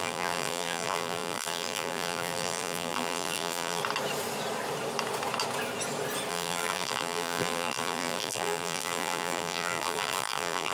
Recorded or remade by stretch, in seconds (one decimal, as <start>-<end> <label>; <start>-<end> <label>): 0.0-3.8 remade; 3.8-6.3 recorded; 6.3-10.7 remade